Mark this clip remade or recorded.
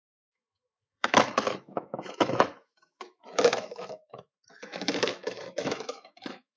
remade